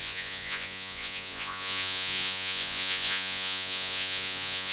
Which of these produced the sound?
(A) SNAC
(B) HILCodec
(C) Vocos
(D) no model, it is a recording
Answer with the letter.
C